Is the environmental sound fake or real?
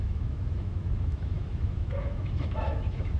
fake